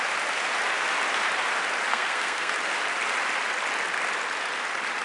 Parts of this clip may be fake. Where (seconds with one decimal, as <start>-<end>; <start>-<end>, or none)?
1.9-2.5